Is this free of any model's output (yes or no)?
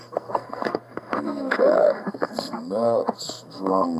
no